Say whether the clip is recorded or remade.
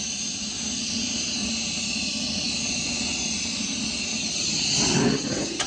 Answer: recorded